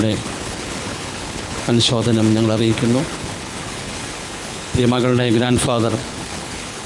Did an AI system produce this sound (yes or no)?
yes